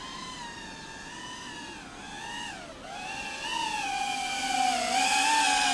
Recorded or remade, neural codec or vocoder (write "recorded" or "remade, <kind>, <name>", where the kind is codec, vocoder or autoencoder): recorded